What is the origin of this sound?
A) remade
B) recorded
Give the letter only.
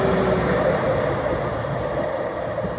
B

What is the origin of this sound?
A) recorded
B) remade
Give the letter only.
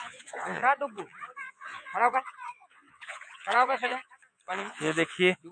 B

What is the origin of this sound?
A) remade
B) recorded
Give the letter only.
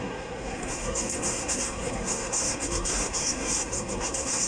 A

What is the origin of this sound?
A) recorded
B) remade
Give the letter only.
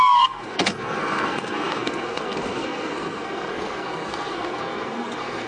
B